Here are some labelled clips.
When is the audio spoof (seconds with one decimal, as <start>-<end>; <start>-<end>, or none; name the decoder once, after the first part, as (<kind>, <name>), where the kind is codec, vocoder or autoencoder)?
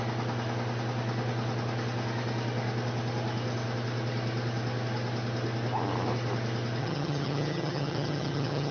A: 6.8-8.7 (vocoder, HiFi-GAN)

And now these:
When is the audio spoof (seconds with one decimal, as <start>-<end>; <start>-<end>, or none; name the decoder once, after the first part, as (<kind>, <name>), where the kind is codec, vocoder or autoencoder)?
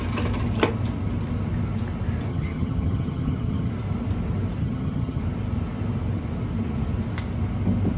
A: 2.3-3.7 (vocoder, HiFi-GAN); 4.6-5.2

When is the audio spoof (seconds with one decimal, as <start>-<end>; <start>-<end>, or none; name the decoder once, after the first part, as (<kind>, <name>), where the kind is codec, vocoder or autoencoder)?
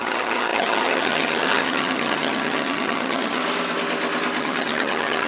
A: 0.0-3.4 (vocoder, HiFi-GAN); 4.4-5.3